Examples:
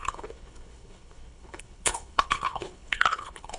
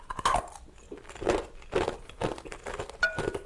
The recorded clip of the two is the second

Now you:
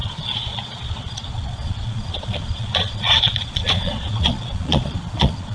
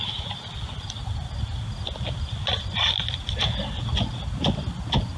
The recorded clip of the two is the second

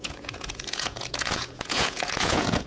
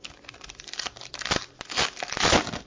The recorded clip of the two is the second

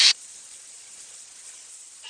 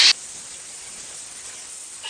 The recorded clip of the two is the second